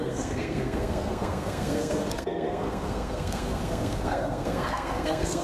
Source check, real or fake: fake